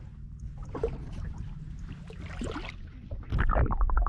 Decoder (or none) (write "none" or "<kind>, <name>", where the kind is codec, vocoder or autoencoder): none